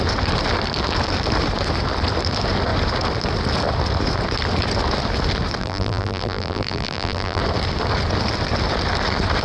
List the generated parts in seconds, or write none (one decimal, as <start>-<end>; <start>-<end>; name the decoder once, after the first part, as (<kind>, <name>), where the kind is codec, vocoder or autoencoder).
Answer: 5.6-7.4 (vocoder, BigVGAN v2)

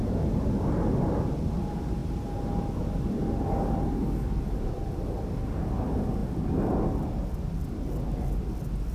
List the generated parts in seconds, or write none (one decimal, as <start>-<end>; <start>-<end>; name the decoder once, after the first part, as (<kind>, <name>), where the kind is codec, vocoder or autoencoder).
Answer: none

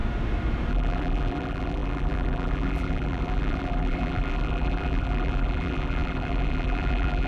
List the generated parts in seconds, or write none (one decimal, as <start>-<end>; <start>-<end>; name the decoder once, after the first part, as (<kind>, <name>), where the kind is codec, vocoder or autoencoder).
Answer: 0.7-7.3 (vocoder, BigVGAN v2)

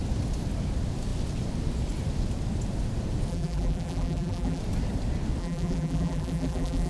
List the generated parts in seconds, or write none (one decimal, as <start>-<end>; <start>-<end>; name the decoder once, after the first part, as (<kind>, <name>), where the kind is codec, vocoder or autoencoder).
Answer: 3.3-4.6 (vocoder, BigVGAN v2); 5.4-6.9

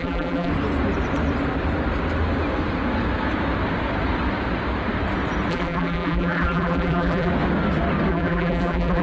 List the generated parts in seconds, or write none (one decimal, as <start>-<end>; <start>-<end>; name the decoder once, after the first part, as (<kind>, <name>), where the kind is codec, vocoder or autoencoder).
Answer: 0.0-0.5 (vocoder, BigVGAN v2); 5.5-7.3; 8.1-9.0

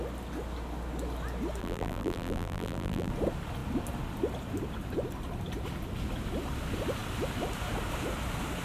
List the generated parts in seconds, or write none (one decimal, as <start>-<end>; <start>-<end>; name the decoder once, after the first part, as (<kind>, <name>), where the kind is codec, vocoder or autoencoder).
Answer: 1.6-3.1 (vocoder, BigVGAN v2)

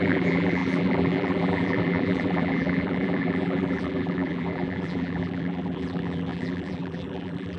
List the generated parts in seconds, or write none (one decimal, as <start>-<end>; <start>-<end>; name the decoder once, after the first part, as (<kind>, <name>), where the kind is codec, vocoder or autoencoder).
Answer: 0.0-7.6 (vocoder, BigVGAN v2)